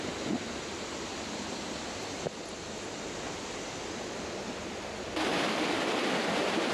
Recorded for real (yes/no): yes